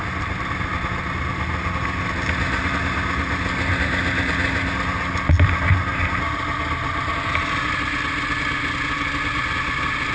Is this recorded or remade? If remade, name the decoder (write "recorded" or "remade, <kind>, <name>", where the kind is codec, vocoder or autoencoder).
recorded